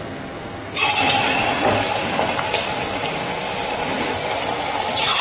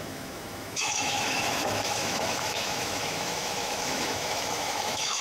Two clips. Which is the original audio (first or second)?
first